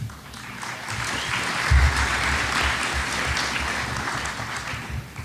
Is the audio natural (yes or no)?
yes